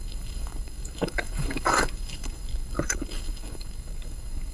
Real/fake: fake